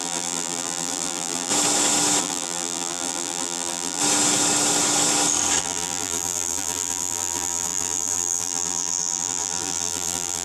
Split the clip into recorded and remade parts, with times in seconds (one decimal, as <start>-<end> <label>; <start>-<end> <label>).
0.0-1.5 remade; 1.5-2.2 recorded; 2.2-4.0 remade; 4.0-5.6 recorded; 5.6-10.4 remade